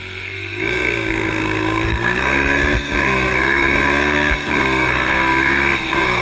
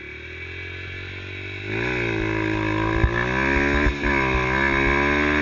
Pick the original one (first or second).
second